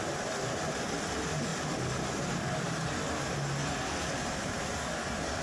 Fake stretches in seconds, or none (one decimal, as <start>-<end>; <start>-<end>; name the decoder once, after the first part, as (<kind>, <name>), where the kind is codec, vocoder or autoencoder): 3.6-4.6 (vocoder, BigVGAN v2)